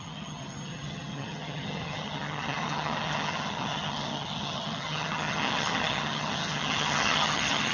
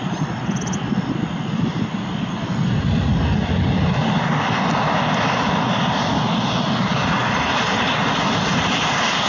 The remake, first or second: first